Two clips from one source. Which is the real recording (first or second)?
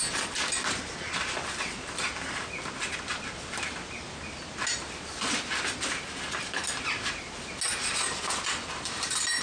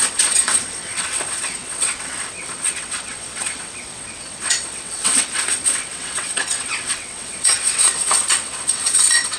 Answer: first